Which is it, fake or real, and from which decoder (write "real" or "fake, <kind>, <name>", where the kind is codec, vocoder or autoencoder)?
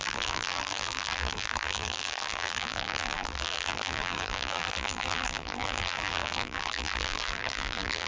fake, vocoder, BigVGAN v2